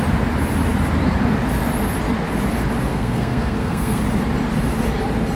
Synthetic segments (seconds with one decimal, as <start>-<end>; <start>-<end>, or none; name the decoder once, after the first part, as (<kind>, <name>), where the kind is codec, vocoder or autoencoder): 2.9-4.0 (codec, SNAC)